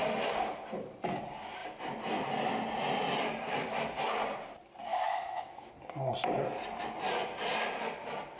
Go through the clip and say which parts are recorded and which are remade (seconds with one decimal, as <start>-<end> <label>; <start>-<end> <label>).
0.0-4.9 recorded; 4.9-5.7 remade; 5.7-8.4 recorded